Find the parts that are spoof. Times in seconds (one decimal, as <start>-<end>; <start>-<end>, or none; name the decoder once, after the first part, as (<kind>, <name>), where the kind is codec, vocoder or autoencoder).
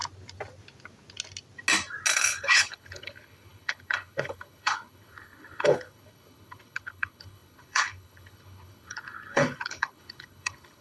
2.1-10.8 (codec, HILCodec)